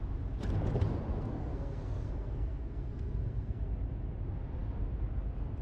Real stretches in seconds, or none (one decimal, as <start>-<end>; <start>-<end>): 0.0-1.1; 3.7-5.6